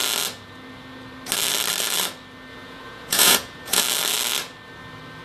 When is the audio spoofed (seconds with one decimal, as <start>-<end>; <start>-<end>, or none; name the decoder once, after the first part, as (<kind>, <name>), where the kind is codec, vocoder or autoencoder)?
2.5-3.8 (vocoder, Vocos)